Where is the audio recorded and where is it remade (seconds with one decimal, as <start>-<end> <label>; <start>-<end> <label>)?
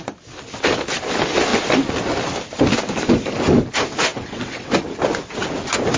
0.0-4.1 recorded; 4.1-4.7 remade; 4.7-6.0 recorded